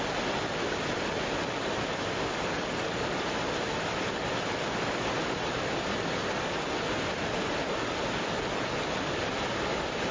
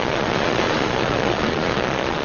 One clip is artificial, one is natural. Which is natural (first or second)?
first